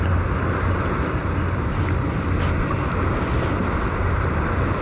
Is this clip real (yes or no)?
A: yes